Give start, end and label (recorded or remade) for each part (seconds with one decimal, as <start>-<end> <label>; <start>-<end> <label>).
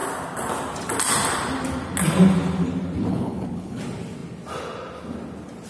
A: 0.0-3.1 recorded; 3.1-3.8 remade; 3.8-5.7 recorded